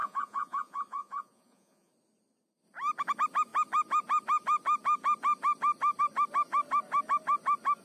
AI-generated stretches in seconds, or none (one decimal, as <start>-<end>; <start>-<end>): 0.0-1.9